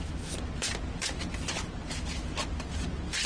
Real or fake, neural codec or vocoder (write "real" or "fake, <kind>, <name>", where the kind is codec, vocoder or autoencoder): real